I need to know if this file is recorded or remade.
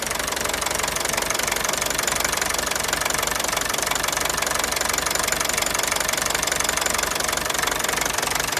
recorded